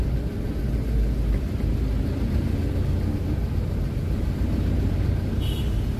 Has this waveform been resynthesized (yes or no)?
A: no